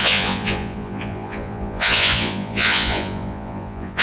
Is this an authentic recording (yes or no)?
no